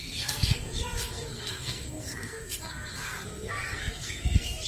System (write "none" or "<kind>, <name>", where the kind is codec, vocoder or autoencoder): codec, SNAC